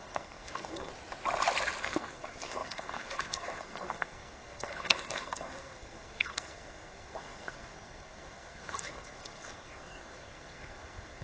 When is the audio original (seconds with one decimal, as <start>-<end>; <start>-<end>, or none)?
0.9-1.8